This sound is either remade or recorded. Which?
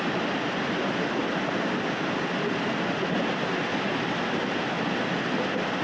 recorded